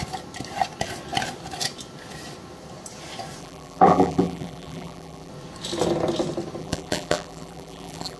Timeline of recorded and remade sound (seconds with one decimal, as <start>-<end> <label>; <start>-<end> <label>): 0.0-3.4 recorded; 3.4-5.3 remade; 5.3-6.6 recorded; 6.6-8.2 remade